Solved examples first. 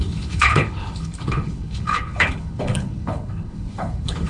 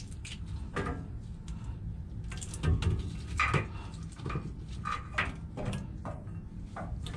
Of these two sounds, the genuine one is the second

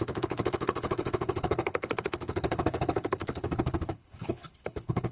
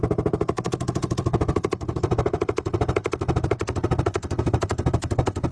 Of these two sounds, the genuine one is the second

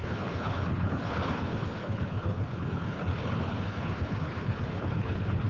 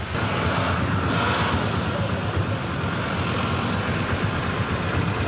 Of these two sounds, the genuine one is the second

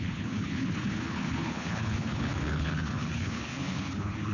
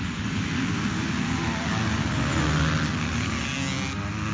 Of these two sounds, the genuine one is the second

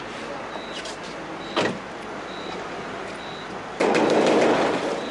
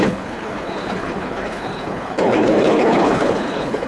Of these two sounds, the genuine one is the first